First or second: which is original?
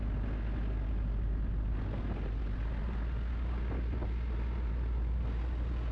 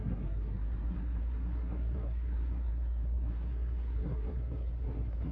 first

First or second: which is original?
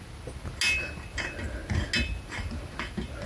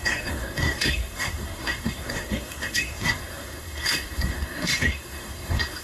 first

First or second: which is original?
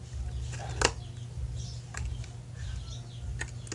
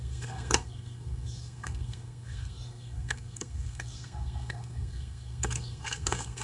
first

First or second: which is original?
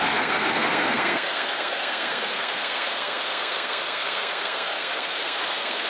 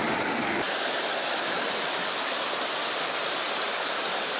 second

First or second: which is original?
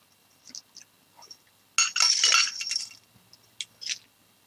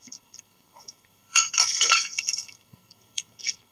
first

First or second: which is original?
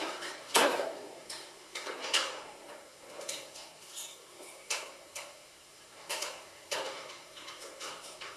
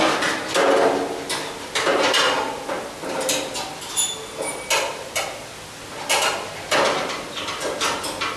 second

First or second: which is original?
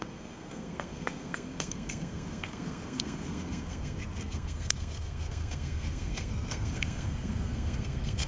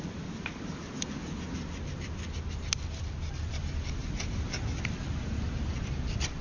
second